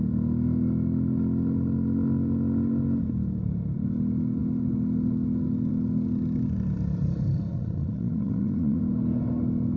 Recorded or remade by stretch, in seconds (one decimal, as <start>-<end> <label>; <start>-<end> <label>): 0.0-7.5 recorded; 7.5-8.8 remade; 8.8-9.8 recorded